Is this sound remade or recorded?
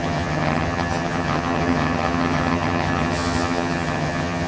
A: remade